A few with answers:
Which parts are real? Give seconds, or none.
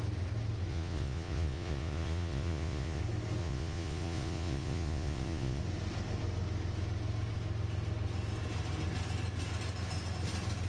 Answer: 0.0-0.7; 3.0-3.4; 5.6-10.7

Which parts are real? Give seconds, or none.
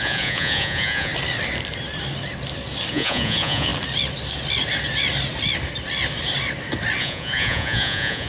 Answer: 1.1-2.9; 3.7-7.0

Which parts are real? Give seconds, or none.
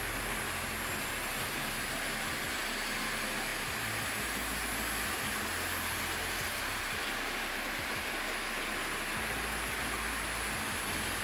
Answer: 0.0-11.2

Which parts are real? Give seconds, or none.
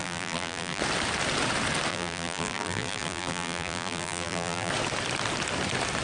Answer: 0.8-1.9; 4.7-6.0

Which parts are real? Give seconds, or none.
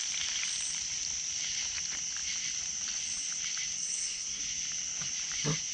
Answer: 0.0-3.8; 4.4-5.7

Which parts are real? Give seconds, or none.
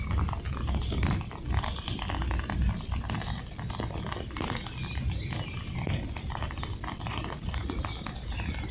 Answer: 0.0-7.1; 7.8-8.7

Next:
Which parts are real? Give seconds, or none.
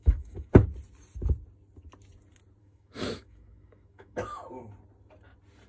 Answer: 0.5-2.6; 4.4-5.7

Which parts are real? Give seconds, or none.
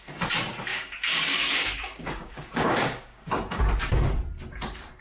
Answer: 0.0-0.7; 3.6-5.0